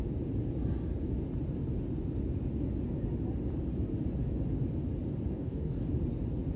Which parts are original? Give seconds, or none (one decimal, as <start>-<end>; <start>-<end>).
0.0-5.3; 5.9-6.6

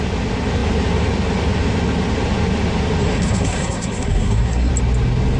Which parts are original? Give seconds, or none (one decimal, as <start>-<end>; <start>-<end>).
0.0-3.0; 4.7-5.4